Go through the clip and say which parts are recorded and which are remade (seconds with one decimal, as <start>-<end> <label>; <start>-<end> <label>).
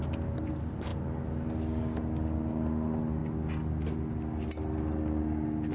0.0-5.7 recorded